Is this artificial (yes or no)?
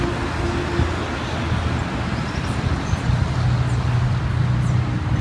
no